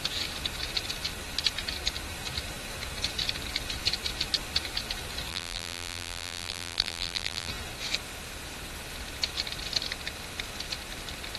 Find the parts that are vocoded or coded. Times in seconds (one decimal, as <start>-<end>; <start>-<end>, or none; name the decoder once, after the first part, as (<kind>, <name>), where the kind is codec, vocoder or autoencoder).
5.3-7.5 (vocoder, BigVGAN v2)